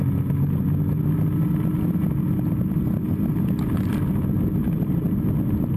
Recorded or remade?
recorded